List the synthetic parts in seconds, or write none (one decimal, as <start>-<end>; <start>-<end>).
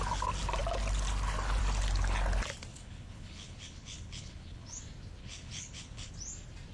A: 2.7-4.8; 5.2-6.1